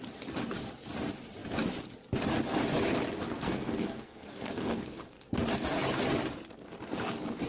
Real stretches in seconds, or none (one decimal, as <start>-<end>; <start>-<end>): 0.0-3.3; 5.2-7.5